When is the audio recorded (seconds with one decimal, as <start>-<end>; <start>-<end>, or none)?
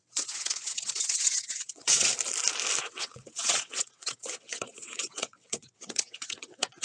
2.1-2.8